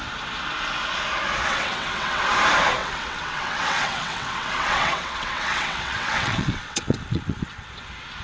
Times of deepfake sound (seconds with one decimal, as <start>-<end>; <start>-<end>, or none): 1.5-2.2; 2.8-7.7